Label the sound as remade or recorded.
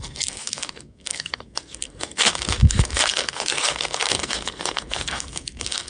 remade